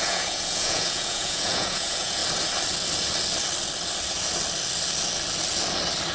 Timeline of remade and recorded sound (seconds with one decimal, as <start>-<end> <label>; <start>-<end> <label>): 0.0-2.2 remade; 2.2-6.1 recorded